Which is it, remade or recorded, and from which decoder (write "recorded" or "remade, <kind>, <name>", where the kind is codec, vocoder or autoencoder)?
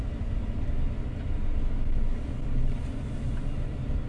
recorded